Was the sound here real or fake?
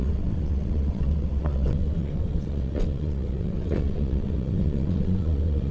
fake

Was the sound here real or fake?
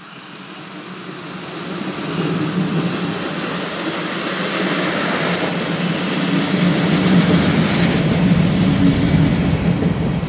real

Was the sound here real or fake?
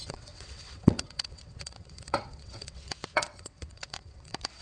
fake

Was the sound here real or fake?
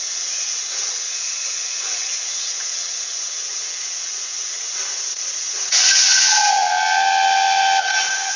fake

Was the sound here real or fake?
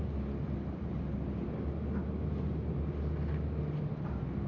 real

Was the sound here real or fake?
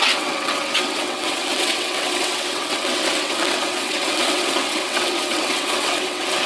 fake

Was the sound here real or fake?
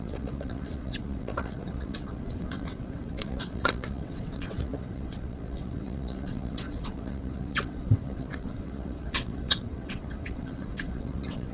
fake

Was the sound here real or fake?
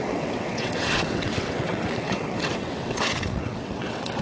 fake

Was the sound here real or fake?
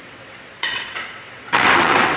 fake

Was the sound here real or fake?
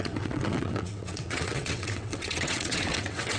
fake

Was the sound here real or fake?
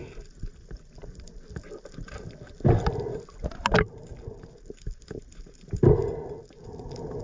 real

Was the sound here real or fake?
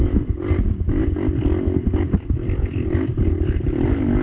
real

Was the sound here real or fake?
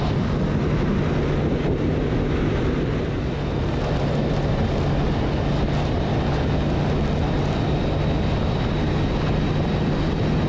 real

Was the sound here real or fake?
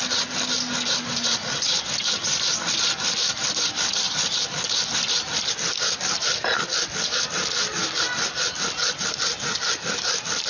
real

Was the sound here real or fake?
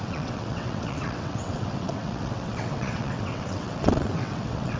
fake